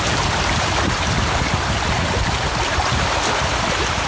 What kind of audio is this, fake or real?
fake